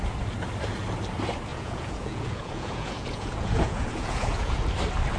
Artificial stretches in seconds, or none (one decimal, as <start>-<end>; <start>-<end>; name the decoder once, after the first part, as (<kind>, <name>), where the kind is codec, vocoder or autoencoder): 1.5-4.6 (vocoder, Vocos)